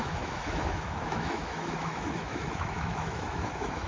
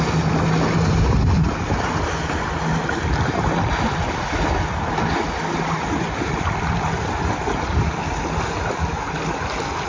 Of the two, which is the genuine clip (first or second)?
second